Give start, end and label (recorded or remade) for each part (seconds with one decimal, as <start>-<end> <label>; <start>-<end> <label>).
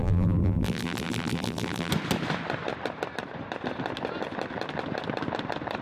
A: 0.0-1.9 remade; 1.9-5.8 recorded